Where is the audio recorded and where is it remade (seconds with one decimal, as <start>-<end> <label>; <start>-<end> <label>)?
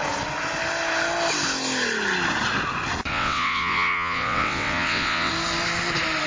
0.0-3.1 recorded; 3.1-5.3 remade; 5.3-6.3 recorded